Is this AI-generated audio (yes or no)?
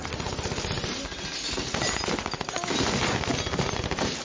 no